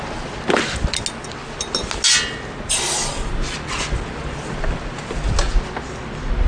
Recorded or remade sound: recorded